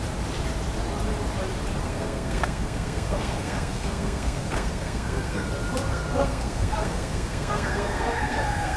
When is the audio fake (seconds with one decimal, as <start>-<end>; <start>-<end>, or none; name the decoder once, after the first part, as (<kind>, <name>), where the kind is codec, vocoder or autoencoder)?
1.8-5.5 (codec, SNAC); 5.9-8.8